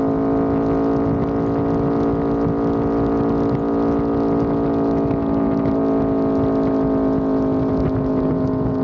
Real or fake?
real